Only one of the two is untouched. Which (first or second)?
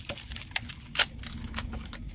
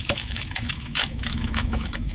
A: first